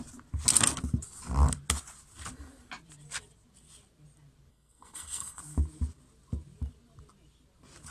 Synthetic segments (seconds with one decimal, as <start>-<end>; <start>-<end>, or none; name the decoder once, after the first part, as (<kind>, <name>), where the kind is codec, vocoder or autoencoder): 4.5-5.4 (codec, SNAC)